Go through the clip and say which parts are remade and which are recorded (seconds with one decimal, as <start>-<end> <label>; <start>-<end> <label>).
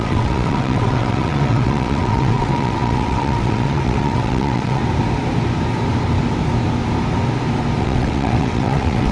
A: 0.0-4.8 remade; 4.8-7.8 recorded; 7.8-9.1 remade